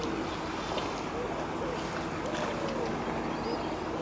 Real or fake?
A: real